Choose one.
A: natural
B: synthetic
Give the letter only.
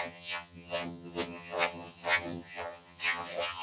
B